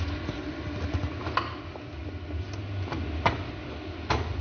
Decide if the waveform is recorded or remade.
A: recorded